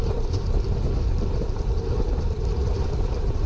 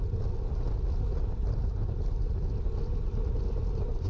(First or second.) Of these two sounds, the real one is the second